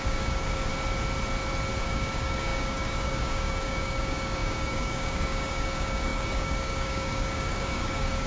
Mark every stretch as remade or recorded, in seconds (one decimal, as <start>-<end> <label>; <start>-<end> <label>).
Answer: 0.0-0.7 remade; 0.7-1.8 recorded; 1.8-8.3 remade